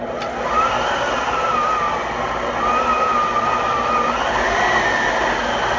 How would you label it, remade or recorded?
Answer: recorded